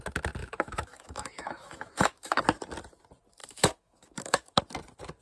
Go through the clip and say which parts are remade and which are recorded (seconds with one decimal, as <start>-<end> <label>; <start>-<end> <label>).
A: 0.0-0.4 recorded; 0.4-2.4 remade; 2.4-3.4 recorded; 3.4-4.6 remade; 4.6-5.2 recorded